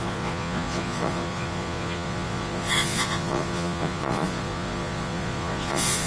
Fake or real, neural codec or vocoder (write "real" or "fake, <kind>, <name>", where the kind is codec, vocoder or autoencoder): fake, vocoder, Vocos